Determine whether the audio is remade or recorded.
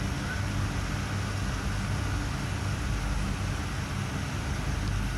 recorded